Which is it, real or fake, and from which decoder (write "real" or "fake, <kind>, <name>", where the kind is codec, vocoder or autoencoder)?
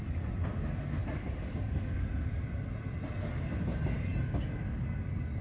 real